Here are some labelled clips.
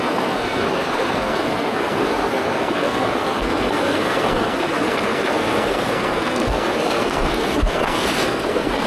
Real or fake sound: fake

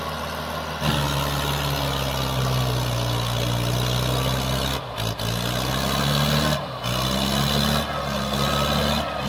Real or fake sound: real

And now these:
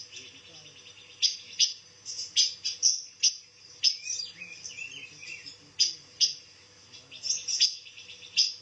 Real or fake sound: real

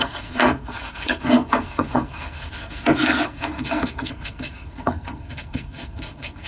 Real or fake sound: fake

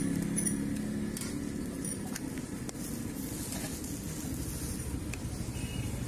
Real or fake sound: real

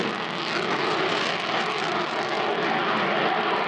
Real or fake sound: real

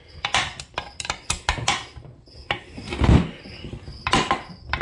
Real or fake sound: real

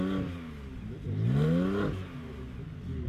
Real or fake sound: real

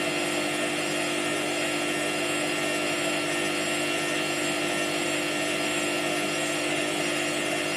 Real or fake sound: real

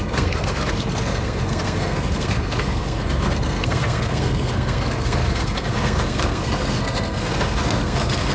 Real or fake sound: fake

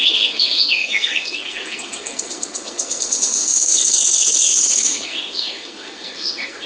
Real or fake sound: fake